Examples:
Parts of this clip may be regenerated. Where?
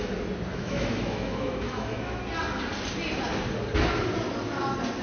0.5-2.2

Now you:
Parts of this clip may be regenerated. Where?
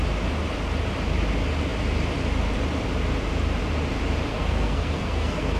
4.3-5.6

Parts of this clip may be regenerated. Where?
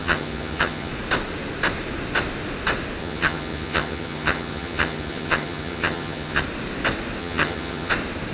0.0-0.9; 3.0-6.4; 7.2-7.9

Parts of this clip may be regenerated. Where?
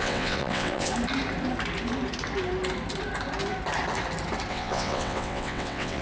0.0-0.9; 4.5-6.0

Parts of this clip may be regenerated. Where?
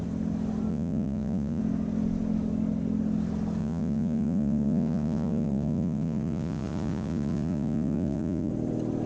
0.7-1.6; 3.6-8.5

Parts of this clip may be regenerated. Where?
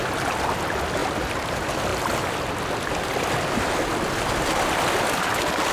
none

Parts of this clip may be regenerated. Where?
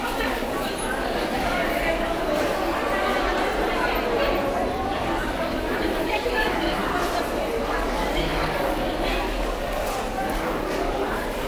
0.0-2.8; 4.7-6.8; 7.7-11.5